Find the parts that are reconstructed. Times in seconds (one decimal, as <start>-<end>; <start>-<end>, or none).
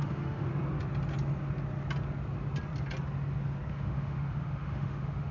0.0-0.5; 3.7-5.3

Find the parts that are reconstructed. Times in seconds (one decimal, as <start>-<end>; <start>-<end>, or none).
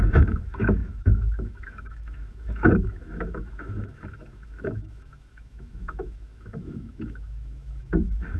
0.0-8.4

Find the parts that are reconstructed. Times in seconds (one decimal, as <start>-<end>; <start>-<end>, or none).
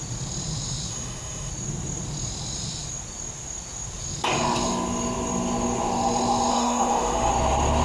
0.9-1.5; 6.5-7.3